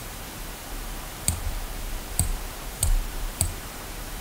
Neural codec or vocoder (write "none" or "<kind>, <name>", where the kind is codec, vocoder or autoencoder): vocoder, BigVGAN v2